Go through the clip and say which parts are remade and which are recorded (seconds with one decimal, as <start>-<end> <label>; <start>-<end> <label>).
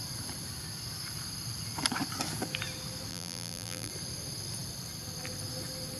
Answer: 0.0-3.1 recorded; 3.1-3.9 remade; 3.9-6.0 recorded